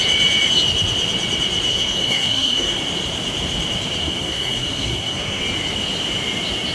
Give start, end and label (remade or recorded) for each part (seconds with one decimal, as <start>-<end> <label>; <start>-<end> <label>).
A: 0.0-1.7 recorded; 1.7-2.8 remade; 2.8-4.0 recorded; 4.0-5.4 remade; 5.4-6.7 recorded